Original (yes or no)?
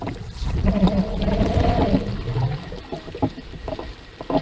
yes